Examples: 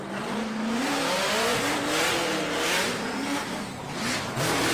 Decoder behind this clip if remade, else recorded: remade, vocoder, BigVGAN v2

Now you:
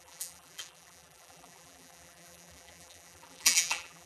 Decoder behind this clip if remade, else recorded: remade, vocoder, BigVGAN v2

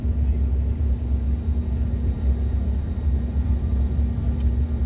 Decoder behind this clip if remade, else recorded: remade, vocoder, BigVGAN v2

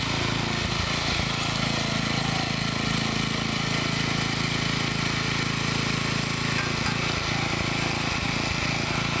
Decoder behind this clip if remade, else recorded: recorded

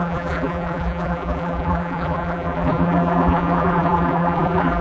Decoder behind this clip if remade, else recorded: remade, vocoder, BigVGAN v2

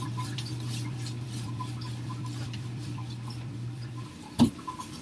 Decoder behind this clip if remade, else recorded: remade, vocoder, BigVGAN v2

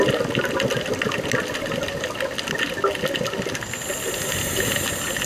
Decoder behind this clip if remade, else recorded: recorded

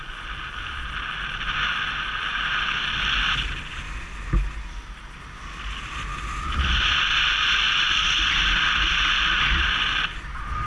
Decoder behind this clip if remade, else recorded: recorded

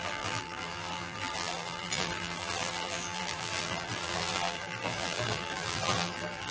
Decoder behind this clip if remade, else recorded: remade, vocoder, BigVGAN v2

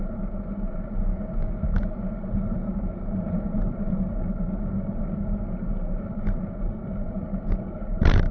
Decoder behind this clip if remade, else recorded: remade, vocoder, BigVGAN v2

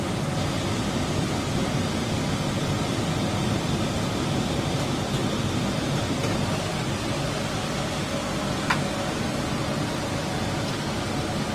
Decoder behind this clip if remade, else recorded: recorded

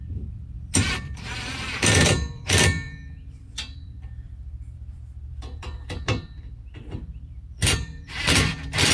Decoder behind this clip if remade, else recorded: remade, vocoder, BigVGAN v2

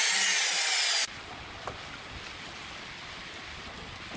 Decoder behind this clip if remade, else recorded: recorded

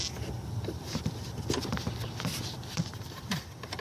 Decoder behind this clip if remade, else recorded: remade, vocoder, BigVGAN v2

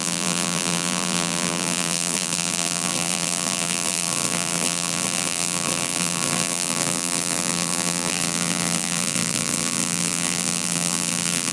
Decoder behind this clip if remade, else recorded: remade, vocoder, BigVGAN v2